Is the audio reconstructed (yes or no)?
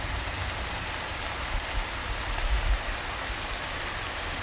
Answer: no